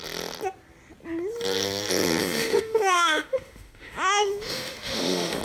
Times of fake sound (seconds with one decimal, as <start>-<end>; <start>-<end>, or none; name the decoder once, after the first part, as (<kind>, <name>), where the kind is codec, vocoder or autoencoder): 2.2-5.4 (autoencoder, DAC-VAE)